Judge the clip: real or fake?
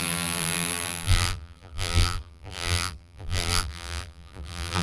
fake